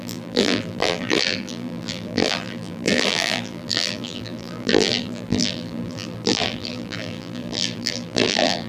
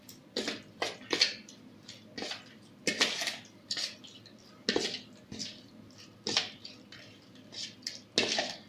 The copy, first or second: first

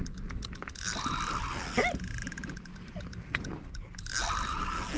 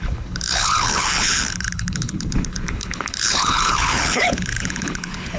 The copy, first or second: second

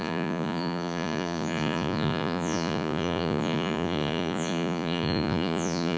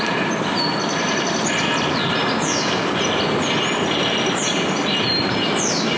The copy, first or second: first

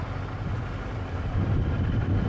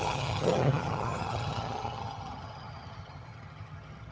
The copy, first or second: second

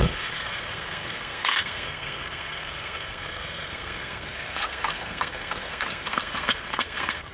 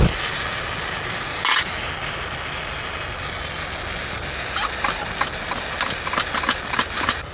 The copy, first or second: first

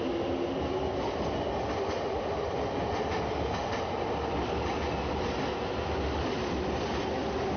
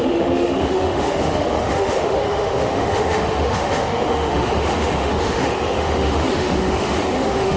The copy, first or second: second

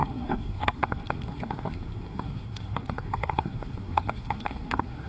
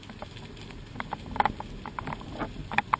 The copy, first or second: first